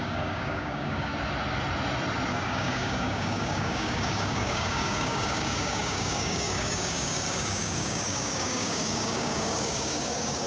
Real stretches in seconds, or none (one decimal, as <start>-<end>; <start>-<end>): 1.1-2.3

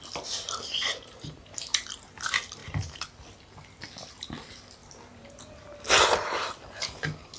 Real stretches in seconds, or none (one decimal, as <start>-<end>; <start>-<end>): 0.0-7.4

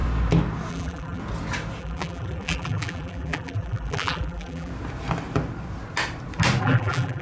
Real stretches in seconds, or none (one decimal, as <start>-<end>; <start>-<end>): 0.0-0.7; 1.2-1.8; 4.7-6.6